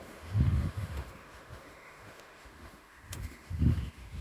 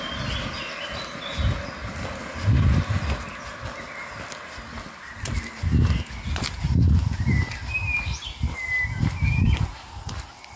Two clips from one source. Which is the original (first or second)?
second